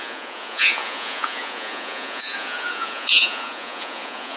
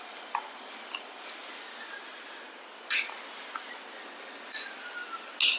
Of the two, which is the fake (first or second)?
first